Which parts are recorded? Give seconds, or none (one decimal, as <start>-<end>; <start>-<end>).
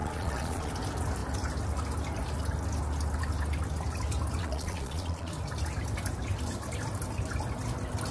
0.7-4.4; 5.3-8.1